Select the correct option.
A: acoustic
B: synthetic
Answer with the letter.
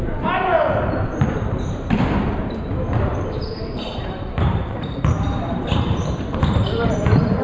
B